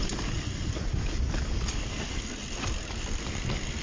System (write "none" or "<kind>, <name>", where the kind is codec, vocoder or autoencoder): none